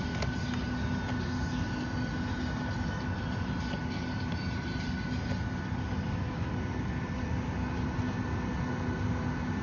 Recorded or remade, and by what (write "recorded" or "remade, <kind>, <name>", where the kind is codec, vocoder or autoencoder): recorded